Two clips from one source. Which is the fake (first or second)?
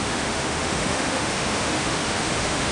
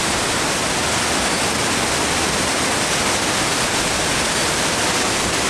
first